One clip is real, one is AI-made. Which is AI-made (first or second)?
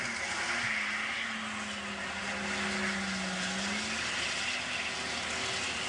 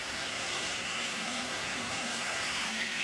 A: second